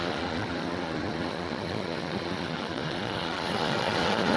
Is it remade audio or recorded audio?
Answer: remade